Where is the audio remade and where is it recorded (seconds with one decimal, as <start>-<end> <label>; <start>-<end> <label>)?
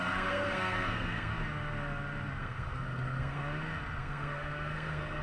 0.0-1.3 remade; 1.3-2.4 recorded; 2.4-3.4 remade; 3.4-4.0 recorded; 4.0-5.2 remade